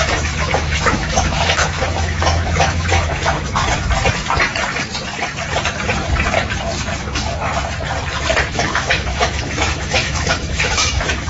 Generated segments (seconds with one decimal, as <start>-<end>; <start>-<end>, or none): 0.0-3.6; 7.0-7.5; 8.5-11.3